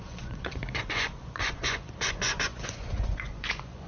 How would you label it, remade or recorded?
remade